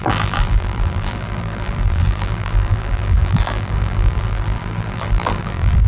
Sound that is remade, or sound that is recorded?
remade